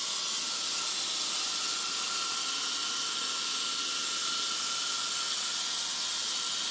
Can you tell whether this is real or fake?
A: real